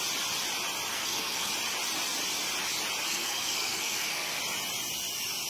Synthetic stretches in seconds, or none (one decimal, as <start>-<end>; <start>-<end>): 0.9-1.5; 3.1-4.4